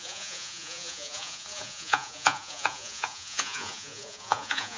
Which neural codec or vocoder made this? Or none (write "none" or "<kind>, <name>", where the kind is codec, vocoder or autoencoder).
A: vocoder, Vocos